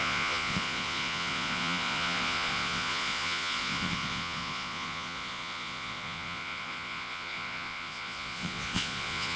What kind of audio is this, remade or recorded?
remade